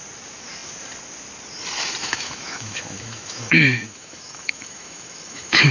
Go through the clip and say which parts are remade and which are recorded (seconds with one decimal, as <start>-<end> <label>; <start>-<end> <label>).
0.0-2.0 recorded; 2.0-5.7 remade